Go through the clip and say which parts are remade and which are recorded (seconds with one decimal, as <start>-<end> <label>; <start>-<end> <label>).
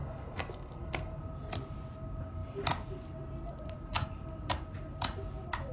0.0-1.2 remade; 1.2-5.7 recorded